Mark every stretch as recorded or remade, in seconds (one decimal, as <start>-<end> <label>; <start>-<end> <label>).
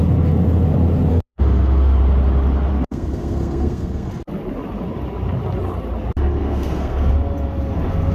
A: 0.0-1.1 recorded; 1.1-2.0 remade; 2.0-2.7 recorded; 2.7-4.1 remade; 4.1-6.4 recorded; 6.4-7.1 remade; 7.1-8.1 recorded